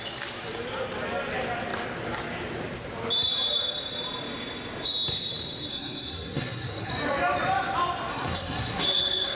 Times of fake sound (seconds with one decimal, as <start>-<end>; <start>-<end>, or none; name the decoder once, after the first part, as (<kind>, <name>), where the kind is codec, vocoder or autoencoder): 5.7-6.9 (codec, SNAC); 8.1-9.4